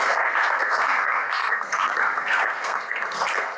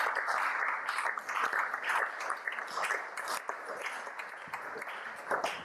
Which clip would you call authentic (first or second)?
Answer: second